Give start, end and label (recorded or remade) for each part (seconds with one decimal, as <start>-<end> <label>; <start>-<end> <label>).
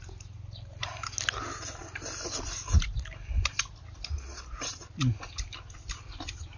0.0-6.6 recorded